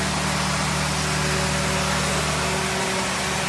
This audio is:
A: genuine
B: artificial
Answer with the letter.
A